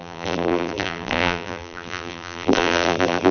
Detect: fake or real fake